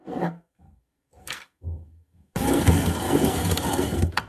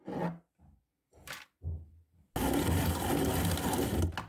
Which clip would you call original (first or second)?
second